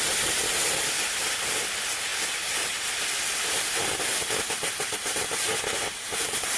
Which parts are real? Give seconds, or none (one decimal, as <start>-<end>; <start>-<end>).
0.0-6.6